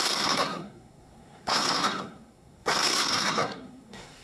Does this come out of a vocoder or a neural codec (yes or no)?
yes